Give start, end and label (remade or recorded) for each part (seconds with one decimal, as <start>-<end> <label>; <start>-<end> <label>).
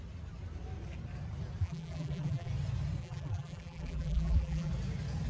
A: 0.0-1.6 recorded; 1.6-2.5 remade; 2.5-3.0 recorded; 3.0-4.7 remade; 4.7-5.3 recorded